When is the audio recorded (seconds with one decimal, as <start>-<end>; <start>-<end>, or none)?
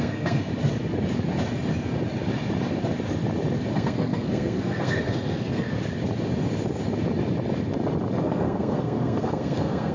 0.5-3.7; 5.7-8.2